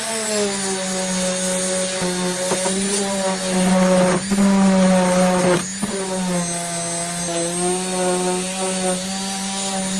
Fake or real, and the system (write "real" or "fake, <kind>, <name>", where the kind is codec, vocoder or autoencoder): real